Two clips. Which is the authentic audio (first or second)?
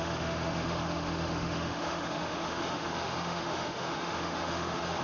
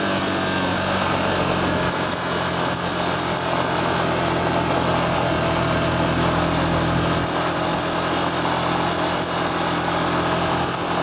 second